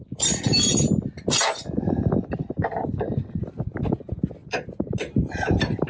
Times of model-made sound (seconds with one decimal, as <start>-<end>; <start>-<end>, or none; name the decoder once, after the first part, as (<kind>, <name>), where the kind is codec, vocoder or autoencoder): 2.6-4.0 (vocoder, BigVGAN v2); 4.4-5.3